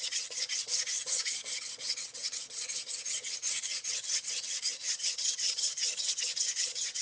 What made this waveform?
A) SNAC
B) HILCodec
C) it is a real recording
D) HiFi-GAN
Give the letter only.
D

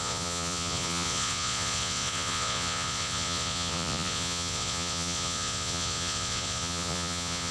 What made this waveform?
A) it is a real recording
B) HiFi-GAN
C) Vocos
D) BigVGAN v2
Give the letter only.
C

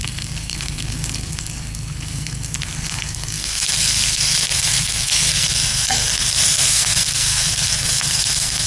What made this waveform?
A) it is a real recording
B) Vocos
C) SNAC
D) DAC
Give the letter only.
C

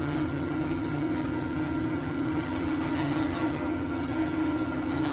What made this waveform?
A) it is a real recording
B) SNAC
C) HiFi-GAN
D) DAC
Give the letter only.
C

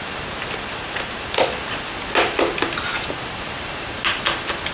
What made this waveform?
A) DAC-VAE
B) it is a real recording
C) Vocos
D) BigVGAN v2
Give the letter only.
B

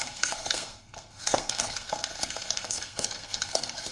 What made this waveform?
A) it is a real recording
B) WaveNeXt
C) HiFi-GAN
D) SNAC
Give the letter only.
D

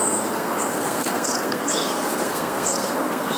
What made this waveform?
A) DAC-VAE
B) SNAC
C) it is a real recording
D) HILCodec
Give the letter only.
B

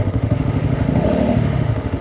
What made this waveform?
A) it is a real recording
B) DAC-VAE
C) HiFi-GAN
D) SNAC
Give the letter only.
B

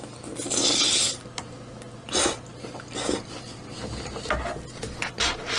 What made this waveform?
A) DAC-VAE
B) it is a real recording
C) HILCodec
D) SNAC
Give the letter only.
B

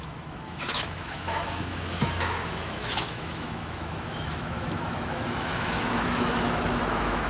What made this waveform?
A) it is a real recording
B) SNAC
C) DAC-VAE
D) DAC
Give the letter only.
C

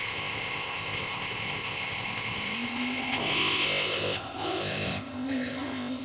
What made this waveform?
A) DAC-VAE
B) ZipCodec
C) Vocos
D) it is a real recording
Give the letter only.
B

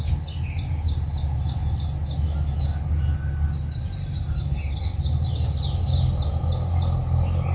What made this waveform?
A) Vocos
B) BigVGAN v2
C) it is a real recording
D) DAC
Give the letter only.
C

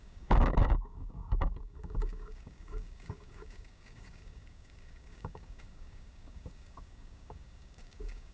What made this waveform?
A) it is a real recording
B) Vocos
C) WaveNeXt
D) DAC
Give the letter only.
D